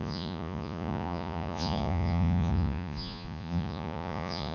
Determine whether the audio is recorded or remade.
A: remade